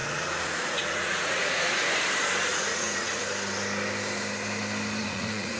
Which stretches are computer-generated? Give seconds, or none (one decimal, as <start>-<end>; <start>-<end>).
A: 0.0-1.8; 2.5-3.2; 5.0-5.6